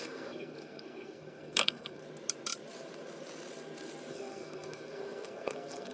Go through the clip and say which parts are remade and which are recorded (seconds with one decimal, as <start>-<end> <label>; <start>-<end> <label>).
0.0-2.0 remade; 2.0-4.1 recorded; 4.1-5.9 remade